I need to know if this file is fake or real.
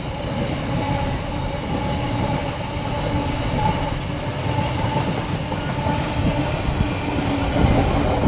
real